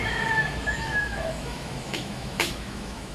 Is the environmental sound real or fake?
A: fake